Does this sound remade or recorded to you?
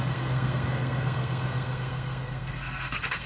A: remade